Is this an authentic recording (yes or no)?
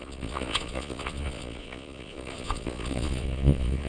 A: no